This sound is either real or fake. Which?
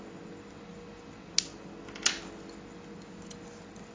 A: real